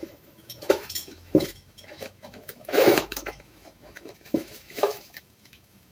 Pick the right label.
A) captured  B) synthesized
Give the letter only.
B